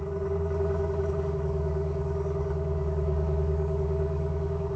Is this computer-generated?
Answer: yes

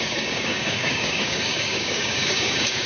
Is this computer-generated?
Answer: yes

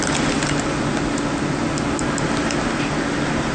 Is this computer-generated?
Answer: no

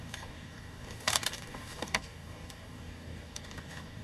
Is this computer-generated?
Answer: yes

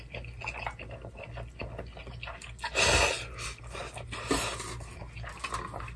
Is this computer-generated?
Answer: no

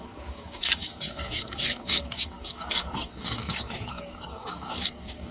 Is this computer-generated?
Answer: yes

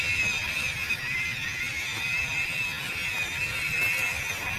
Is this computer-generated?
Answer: no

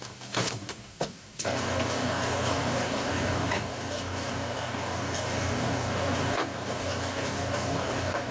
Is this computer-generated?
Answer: yes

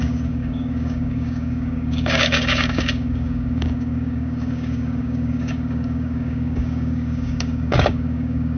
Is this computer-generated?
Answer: yes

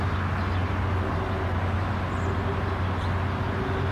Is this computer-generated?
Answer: no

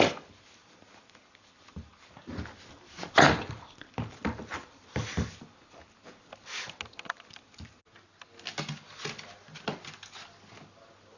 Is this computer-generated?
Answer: no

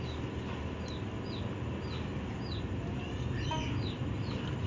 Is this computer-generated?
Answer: no